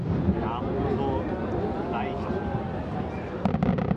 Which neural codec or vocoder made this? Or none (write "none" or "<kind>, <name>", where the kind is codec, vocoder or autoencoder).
none